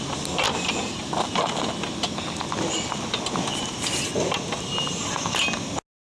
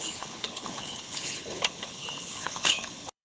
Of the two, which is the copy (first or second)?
second